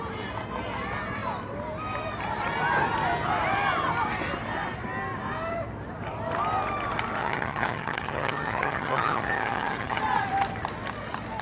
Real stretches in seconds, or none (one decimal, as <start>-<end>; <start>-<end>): 0.0-7.2; 10.0-11.4